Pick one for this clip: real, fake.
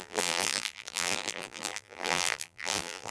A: fake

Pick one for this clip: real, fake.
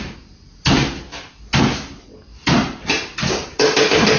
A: real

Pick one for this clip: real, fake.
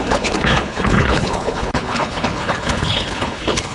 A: fake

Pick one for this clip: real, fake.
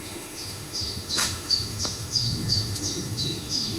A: fake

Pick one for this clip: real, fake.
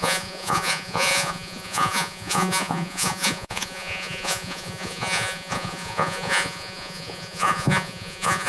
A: fake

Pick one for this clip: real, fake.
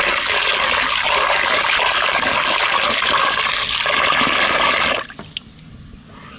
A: real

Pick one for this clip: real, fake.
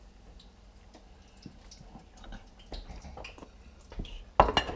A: real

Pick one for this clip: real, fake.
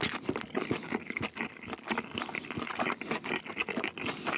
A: real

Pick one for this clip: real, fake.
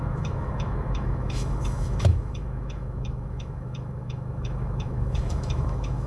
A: fake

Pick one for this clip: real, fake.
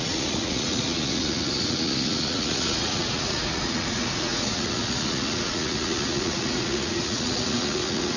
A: fake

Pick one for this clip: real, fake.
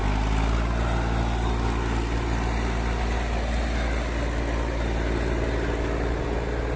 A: real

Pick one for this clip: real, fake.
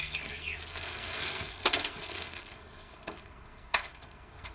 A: fake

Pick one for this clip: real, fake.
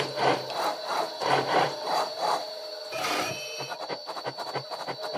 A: fake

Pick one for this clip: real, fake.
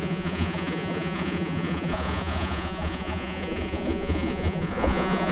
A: fake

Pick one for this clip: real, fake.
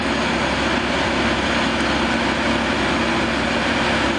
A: real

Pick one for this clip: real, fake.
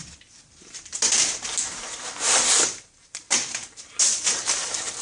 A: real